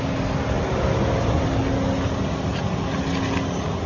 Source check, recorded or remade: recorded